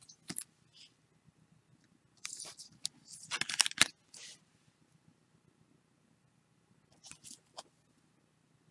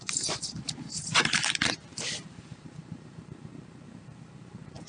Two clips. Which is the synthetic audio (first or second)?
second